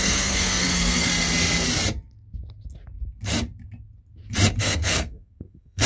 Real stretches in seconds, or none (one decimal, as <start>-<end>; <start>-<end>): 1.1-4.6